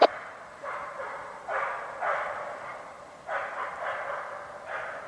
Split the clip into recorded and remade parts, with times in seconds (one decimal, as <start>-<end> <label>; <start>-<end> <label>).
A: 0.0-0.5 remade; 0.5-5.1 recorded